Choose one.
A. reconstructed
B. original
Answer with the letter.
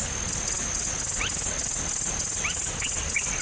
B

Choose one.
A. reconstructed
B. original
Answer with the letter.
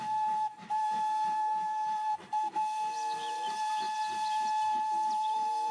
A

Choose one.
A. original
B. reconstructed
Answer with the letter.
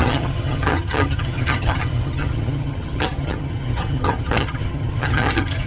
B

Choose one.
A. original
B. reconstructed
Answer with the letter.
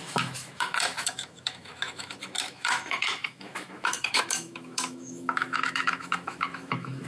B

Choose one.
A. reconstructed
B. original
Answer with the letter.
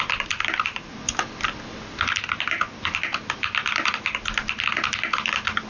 B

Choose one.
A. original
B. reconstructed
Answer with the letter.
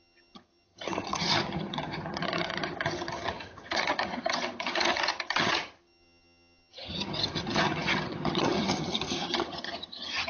B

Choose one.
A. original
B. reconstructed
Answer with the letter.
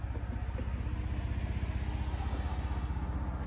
A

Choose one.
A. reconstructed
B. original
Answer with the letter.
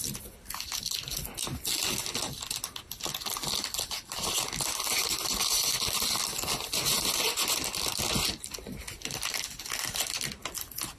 B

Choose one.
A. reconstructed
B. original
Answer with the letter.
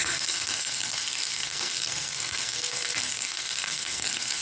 A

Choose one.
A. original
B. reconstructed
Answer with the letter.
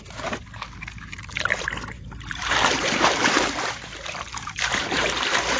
B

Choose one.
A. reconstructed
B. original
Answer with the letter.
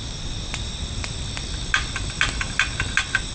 B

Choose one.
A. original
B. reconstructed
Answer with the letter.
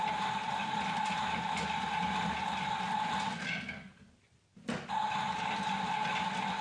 A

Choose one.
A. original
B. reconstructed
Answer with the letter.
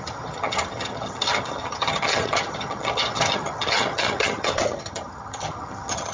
B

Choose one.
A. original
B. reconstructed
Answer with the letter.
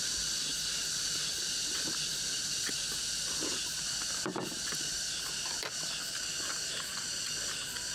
A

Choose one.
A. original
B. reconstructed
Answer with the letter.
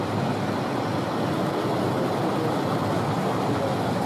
A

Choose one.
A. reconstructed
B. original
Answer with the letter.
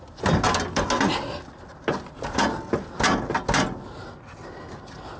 B